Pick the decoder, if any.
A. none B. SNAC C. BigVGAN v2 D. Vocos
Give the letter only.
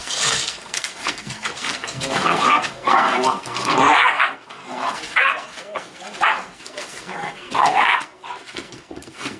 B